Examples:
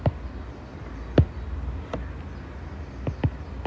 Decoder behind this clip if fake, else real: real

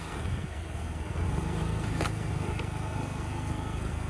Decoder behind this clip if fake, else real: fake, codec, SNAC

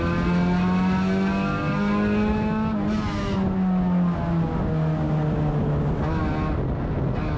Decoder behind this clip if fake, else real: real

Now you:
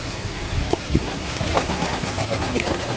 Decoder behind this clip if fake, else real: fake, codec, SNAC